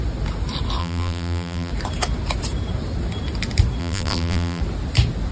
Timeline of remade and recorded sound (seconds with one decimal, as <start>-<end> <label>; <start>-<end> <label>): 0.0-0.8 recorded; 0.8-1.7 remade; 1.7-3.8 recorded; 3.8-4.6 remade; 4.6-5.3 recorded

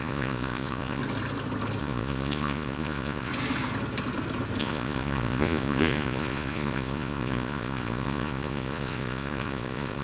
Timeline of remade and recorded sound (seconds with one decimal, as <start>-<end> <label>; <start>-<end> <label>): 0.0-1.0 remade; 1.0-1.8 recorded; 1.8-3.3 remade; 3.3-4.6 recorded; 4.6-10.0 remade

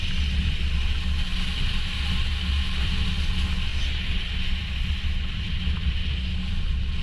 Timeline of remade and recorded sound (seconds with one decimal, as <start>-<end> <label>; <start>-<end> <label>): 0.0-7.0 recorded

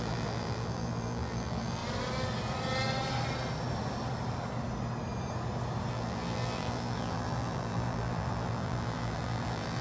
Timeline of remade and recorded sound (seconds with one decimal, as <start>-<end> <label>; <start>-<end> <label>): 0.0-1.8 remade; 1.8-5.9 recorded; 5.9-9.8 remade